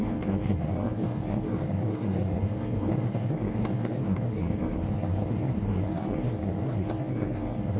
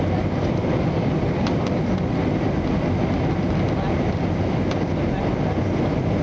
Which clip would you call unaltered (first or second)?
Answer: second